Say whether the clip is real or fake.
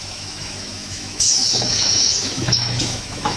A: fake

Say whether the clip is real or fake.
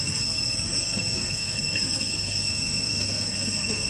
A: fake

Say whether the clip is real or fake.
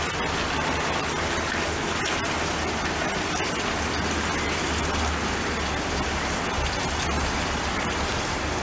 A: real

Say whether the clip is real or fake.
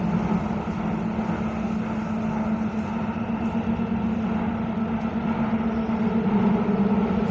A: real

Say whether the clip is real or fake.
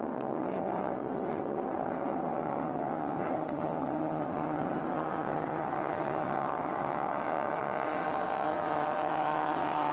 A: fake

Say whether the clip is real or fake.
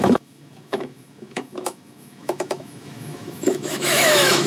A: fake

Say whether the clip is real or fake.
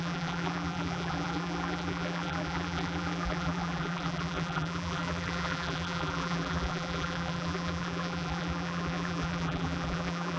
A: fake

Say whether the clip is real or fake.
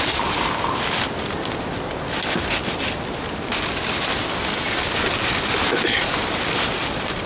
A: real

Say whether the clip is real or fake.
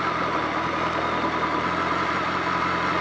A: real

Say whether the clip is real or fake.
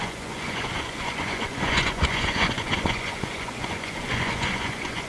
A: fake